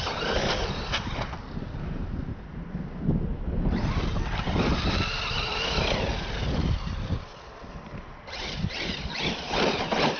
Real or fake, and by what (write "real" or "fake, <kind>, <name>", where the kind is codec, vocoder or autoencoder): real